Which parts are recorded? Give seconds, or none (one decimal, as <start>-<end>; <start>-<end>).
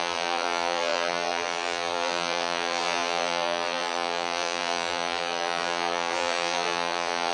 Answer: none